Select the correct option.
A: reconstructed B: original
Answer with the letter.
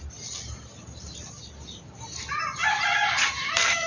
B